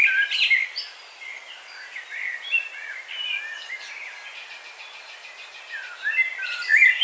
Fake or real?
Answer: real